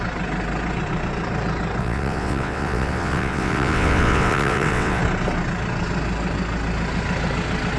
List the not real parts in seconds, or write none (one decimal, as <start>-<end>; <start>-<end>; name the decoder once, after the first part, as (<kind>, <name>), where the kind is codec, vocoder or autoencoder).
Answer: 1.8-5.0 (vocoder, WaveNeXt)